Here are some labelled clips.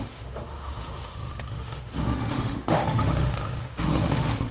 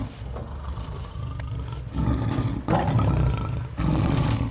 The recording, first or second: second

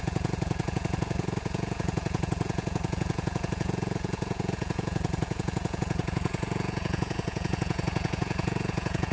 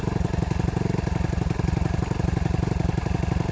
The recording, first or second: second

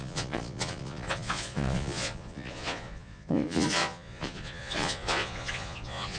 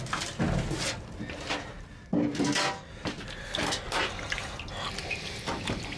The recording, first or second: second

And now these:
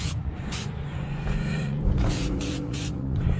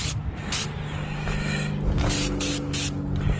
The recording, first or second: second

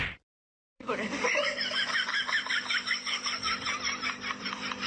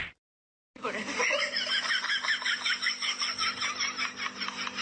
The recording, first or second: second